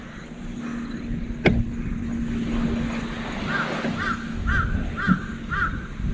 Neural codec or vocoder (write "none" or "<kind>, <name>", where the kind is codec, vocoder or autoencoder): none